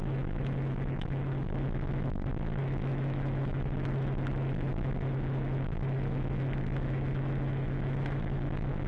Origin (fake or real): fake